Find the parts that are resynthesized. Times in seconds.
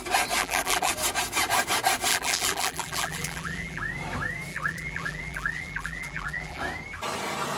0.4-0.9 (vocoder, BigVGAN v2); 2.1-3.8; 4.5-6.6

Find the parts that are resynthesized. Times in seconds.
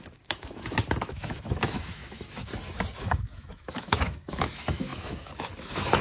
0.0-2.5 (autoencoder, DAC-VAE); 3.0-6.0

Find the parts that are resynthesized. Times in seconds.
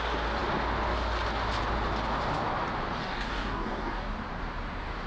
3.0-4.1 (codec, DAC)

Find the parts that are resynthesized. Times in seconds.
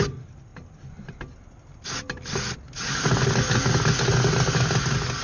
none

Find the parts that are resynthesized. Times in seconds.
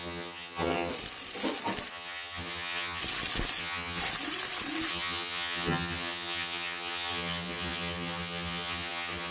0.0-0.9 (vocoder, HiFi-GAN); 1.9-3.0; 3.6-4.0; 4.9-9.3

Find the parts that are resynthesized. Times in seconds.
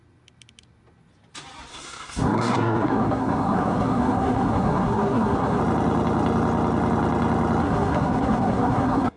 1.7-5.6 (codec, SNAC); 7.6-9.2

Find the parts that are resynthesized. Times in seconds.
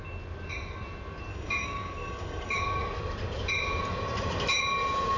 1.3-2.6 (codec, DAC)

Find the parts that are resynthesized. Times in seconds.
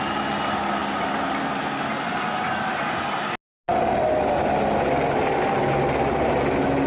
none